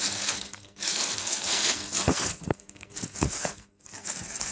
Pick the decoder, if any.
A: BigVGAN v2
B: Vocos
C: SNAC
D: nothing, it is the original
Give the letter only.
C